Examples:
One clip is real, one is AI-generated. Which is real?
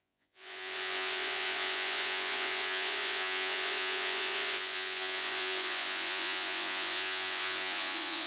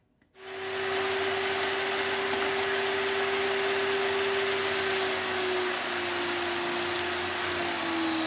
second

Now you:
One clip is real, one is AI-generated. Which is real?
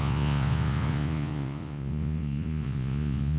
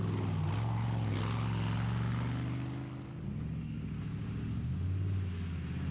second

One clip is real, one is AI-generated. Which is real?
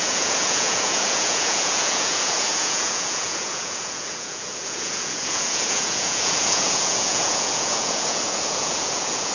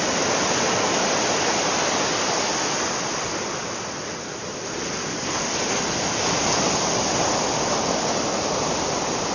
second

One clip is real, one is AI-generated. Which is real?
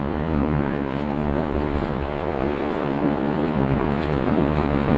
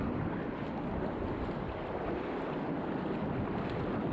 second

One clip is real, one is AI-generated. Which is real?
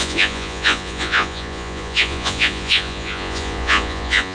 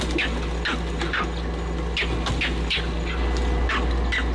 second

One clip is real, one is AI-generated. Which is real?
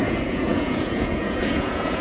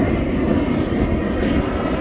second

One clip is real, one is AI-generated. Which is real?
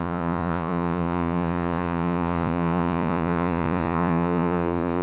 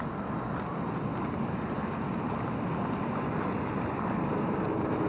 second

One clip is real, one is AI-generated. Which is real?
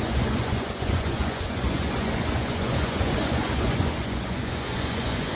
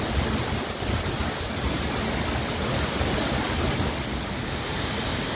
second